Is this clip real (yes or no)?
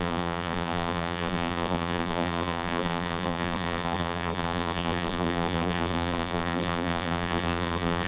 no